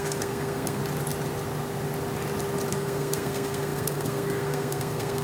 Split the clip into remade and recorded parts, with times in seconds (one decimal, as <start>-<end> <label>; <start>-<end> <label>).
0.0-0.8 remade; 0.8-2.7 recorded; 2.7-5.2 remade